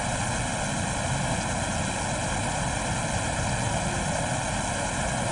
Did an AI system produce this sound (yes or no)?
no